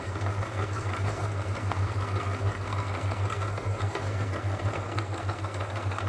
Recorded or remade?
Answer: remade